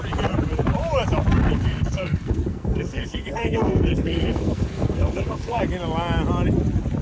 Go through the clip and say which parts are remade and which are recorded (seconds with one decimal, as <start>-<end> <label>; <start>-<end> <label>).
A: 0.0-1.4 recorded; 1.4-5.6 remade; 5.6-7.0 recorded